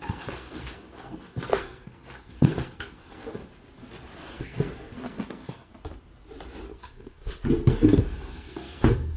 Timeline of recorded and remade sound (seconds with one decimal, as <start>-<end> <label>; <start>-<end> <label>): 0.0-3.4 remade; 3.4-4.3 recorded; 4.3-5.7 remade; 5.7-6.7 recorded; 6.7-9.2 remade